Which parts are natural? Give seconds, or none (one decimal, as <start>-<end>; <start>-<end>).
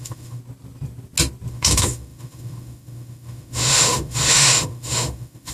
0.4-1.5